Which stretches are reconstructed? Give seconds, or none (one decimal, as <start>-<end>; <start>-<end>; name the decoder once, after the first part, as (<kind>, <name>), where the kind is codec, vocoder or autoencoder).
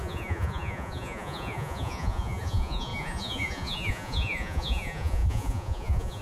0.0-6.2 (vocoder, Vocos)